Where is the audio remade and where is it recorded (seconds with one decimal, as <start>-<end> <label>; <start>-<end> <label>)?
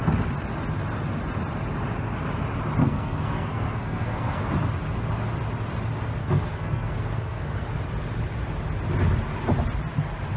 0.0-2.8 recorded; 2.8-4.5 remade; 4.5-6.2 recorded; 6.2-7.8 remade; 7.8-10.4 recorded